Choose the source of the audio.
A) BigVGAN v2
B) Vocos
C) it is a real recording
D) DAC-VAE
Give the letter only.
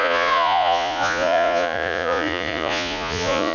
B